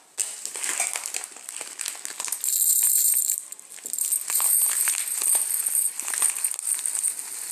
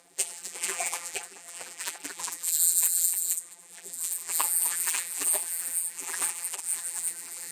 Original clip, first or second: first